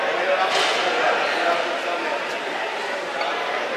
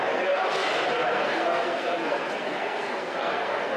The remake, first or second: second